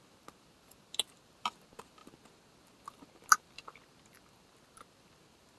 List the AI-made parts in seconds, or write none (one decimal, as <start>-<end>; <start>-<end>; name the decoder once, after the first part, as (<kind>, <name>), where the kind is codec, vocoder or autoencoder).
none